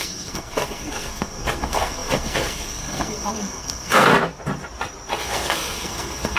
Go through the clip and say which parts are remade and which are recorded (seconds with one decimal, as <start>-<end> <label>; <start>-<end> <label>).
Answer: 0.0-4.1 remade; 4.1-5.2 recorded; 5.2-6.4 remade